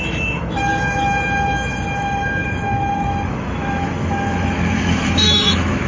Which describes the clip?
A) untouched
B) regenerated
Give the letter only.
B